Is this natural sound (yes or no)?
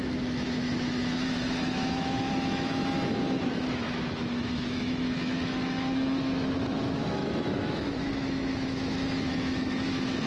no